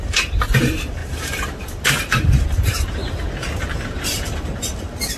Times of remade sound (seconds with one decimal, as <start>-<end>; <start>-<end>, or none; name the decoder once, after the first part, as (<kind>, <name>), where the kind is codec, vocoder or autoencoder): 0.0-3.0 (vocoder, BigVGAN v2); 3.9-5.2

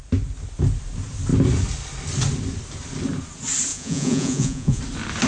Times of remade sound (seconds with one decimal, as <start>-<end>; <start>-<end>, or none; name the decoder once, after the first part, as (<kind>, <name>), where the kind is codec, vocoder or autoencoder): 3.7-4.8 (vocoder, Vocos)